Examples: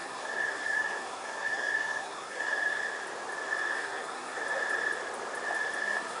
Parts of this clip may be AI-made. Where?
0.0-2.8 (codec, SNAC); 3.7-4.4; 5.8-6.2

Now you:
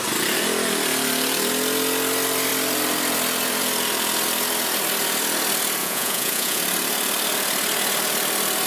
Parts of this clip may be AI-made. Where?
5.8-6.6 (vocoder, Vocos)

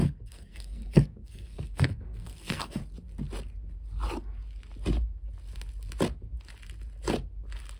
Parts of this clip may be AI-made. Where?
0.0-2.8 (codec, SNAC)

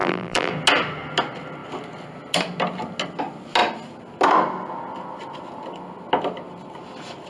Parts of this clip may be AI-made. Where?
0.0-0.5 (vocoder, BigVGAN v2)

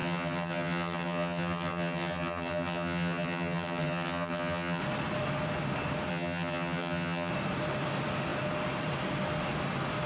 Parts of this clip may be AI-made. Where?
0.0-4.8 (vocoder, HiFi-GAN); 6.1-7.3

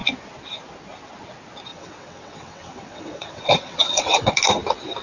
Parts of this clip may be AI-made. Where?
1.7-4.3 (vocoder, WaveNeXt)

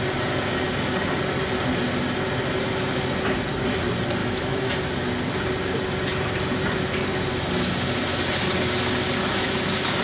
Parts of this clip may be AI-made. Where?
4.2-4.7 (autoencoder, DAC-VAE); 9.2-10.0

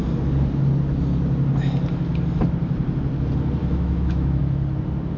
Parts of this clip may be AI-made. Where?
3.6-4.4 (autoencoder, DAC-VAE)